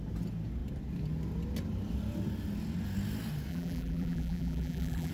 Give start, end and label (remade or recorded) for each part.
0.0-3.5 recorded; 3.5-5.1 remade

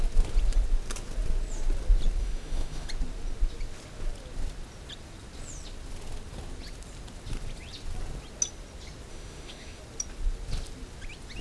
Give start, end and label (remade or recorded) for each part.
0.0-2.2 recorded; 2.2-2.9 remade; 2.9-9.1 recorded; 9.1-9.8 remade; 9.8-11.4 recorded

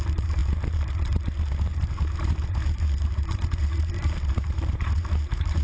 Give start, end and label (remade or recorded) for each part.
0.0-5.6 remade

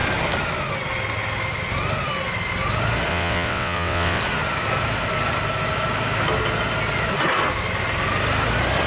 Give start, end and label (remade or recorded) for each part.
0.0-3.1 recorded; 3.1-4.2 remade; 4.2-8.9 recorded

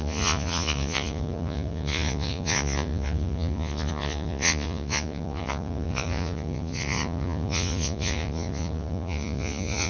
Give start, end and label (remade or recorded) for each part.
0.0-9.9 remade

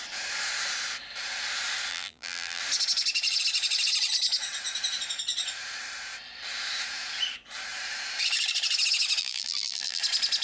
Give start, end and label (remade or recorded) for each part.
0.0-1.9 recorded; 1.9-2.6 remade; 2.6-9.2 recorded; 9.2-10.0 remade; 10.0-10.4 recorded

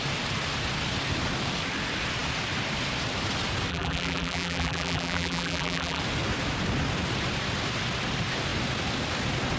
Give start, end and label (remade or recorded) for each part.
0.0-3.7 recorded; 3.7-6.0 remade; 6.0-9.6 recorded